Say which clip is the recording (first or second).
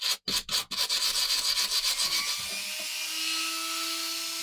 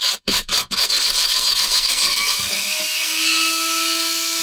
first